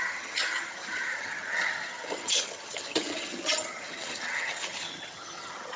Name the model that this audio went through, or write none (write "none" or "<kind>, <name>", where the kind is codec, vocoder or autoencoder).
vocoder, HiFi-GAN